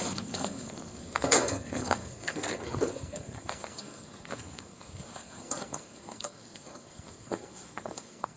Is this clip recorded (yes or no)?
no